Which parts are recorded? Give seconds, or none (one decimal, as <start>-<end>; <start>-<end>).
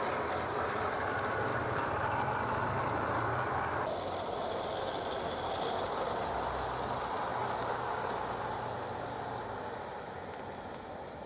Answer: 0.0-1.5; 2.6-11.3